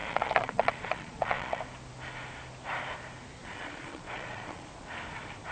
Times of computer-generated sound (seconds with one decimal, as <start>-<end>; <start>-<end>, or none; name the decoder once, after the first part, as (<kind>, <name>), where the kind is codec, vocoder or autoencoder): 0.0-1.6 (vocoder, Vocos); 3.4-4.9